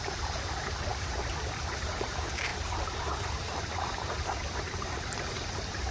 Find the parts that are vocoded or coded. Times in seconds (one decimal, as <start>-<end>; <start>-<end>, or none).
0.0-5.9